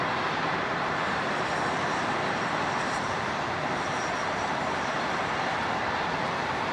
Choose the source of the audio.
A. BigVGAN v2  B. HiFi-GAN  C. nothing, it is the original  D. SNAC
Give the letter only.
A